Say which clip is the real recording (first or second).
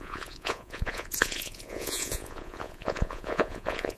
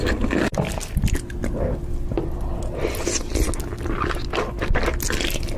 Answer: second